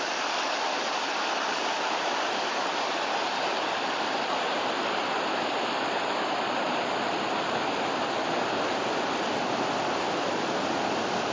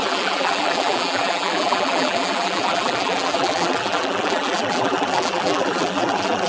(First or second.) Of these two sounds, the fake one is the second